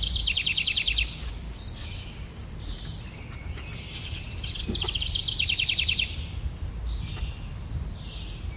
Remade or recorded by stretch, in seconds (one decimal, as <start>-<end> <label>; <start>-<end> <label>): 0.0-8.6 recorded